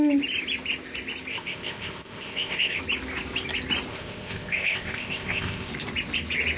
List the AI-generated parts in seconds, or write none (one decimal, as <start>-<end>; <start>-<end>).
1.3-2.8; 3.9-5.7